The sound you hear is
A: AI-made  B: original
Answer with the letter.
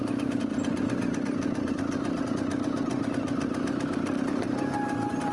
B